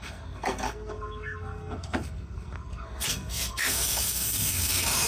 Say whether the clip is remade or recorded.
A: remade